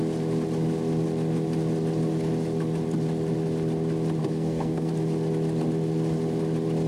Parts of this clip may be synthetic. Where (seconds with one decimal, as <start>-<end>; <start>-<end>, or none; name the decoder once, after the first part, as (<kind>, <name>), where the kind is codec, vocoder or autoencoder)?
4.2-4.9 (codec, SNAC)